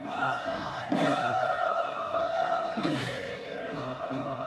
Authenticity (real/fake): fake